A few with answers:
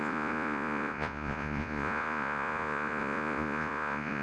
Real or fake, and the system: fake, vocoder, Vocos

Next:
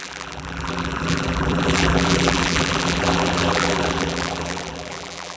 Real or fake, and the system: fake, vocoder, BigVGAN v2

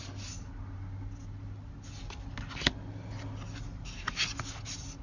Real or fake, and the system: real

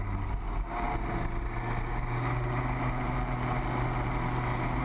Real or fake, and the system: real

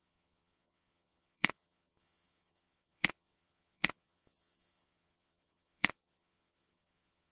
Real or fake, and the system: fake, vocoder, Vocos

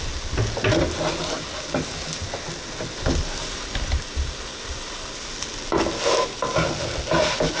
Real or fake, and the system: real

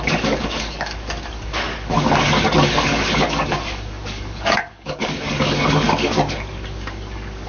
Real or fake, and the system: fake, codec, DAC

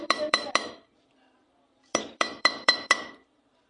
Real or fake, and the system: fake, vocoder, BigVGAN v2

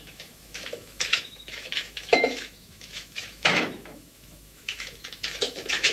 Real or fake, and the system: fake, autoencoder, DAC-VAE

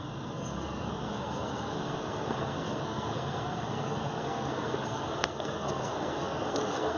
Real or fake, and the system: fake, codec, SNAC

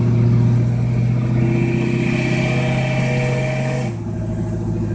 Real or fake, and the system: real